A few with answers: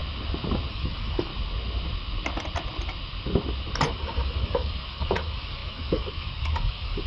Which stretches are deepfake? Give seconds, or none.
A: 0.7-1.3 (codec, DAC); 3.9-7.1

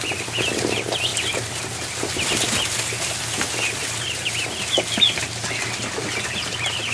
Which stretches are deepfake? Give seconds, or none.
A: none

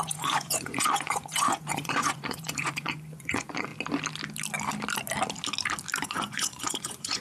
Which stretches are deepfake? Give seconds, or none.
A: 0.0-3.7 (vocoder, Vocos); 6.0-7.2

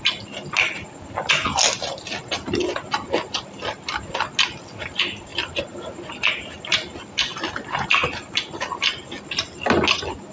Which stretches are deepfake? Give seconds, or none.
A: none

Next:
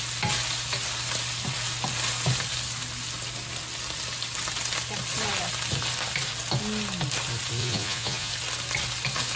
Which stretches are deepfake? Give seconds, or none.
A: 7.6-8.3 (vocoder, Vocos)